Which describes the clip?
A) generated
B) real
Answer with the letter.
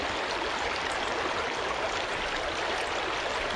B